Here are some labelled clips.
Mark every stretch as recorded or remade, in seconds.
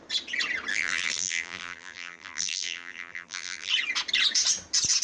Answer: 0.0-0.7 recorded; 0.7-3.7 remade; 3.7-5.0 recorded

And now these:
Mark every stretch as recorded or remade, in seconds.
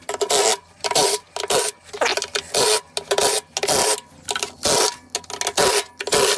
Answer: 0.0-0.5 recorded; 0.5-1.2 remade; 1.2-6.4 recorded